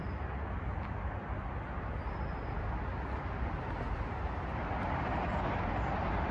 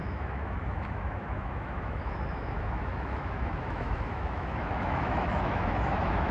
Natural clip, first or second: first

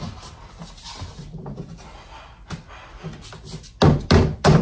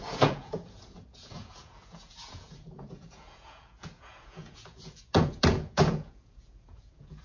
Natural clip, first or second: first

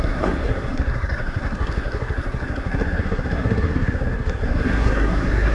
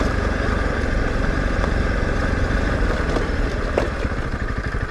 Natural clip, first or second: second